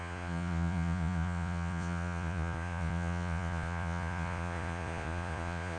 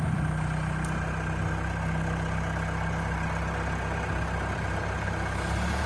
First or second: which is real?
second